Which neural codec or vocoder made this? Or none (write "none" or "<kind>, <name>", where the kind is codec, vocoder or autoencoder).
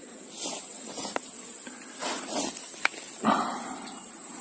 none